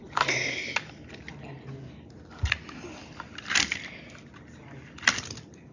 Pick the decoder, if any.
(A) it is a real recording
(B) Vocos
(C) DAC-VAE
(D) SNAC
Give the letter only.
A